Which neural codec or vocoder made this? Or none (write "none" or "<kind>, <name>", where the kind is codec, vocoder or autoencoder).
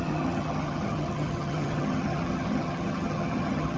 vocoder, HiFi-GAN